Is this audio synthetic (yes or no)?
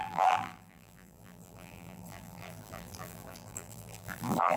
yes